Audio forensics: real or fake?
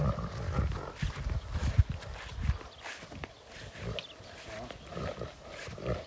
real